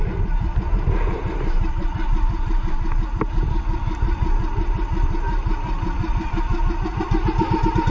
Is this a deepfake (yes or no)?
no